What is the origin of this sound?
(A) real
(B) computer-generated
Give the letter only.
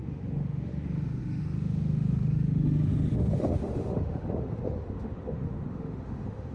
B